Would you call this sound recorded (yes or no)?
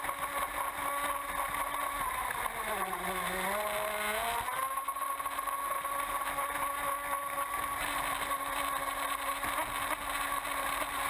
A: yes